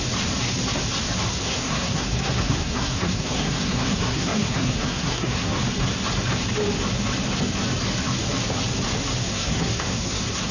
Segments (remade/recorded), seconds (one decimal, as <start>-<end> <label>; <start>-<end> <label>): 0.0-1.3 recorded; 1.3-5.5 remade; 5.5-9.3 recorded; 9.3-10.5 remade